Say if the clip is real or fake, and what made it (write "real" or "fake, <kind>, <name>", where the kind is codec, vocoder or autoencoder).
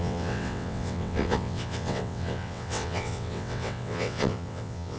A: fake, vocoder, WaveNeXt